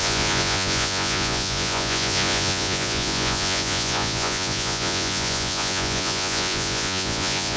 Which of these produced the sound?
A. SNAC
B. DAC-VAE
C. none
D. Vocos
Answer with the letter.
D